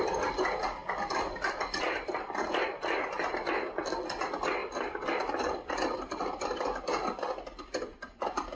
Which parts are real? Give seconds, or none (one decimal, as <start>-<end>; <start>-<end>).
0.0-0.8; 2.5-4.6; 6.8-8.6